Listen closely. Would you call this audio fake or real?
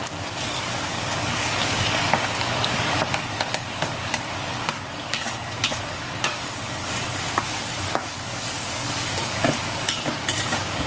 fake